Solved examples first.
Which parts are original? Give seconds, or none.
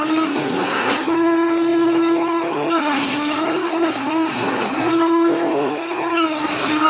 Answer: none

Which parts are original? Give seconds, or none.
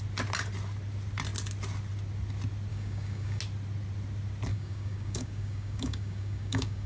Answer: 0.0-2.7; 3.4-4.5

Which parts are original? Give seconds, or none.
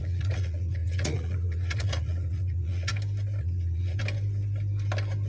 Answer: 2.9-3.4; 4.0-5.3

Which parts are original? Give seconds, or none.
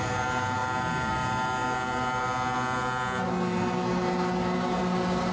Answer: 0.0-5.3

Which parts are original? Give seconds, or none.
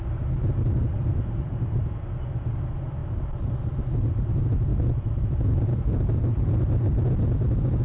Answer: 0.0-0.9; 1.8-4.7; 6.9-7.8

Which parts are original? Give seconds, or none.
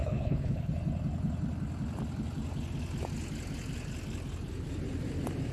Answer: 0.7-5.5